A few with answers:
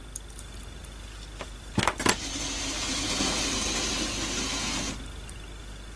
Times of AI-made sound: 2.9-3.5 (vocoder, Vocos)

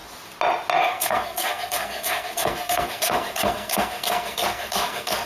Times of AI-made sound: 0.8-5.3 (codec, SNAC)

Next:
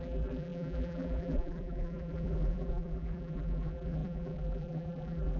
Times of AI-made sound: 0.0-5.4 (vocoder, BigVGAN v2)

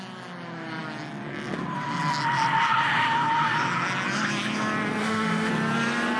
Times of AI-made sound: 5.0-5.5 (autoencoder, DAC-VAE)